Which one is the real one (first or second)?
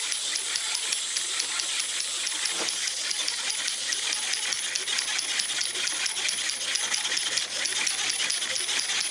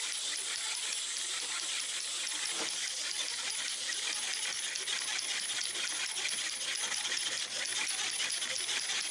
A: first